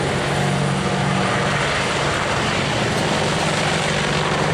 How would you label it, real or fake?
real